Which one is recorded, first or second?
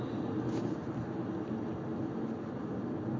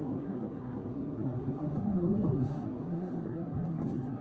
first